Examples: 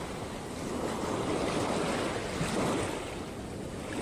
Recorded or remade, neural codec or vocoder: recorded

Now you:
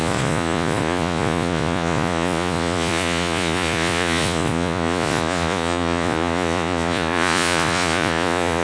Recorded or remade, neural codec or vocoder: remade, vocoder, Vocos